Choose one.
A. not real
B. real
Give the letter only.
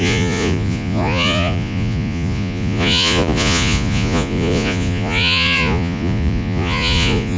A